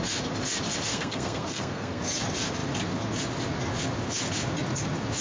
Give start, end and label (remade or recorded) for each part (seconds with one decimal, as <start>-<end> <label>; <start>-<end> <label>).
0.0-0.9 recorded; 0.9-2.0 remade; 2.0-5.2 recorded